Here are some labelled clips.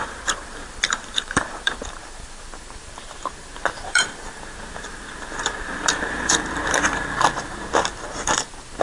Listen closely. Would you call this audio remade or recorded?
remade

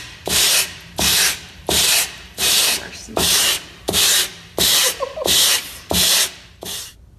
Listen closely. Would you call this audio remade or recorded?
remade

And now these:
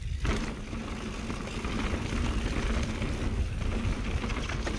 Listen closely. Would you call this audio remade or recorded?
recorded